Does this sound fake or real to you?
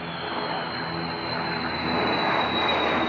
real